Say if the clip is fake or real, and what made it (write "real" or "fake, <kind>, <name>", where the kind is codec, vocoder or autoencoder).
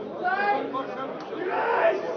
real